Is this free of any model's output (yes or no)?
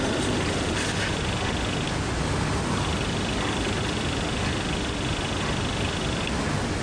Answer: yes